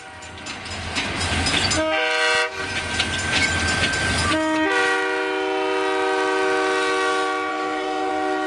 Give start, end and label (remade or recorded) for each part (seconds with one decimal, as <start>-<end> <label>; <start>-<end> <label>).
0.0-7.5 recorded; 7.5-8.1 remade; 8.1-8.5 recorded